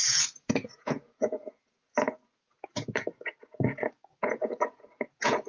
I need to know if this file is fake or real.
fake